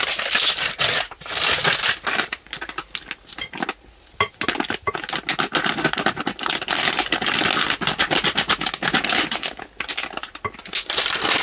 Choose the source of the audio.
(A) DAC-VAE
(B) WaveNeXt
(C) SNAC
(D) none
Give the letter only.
D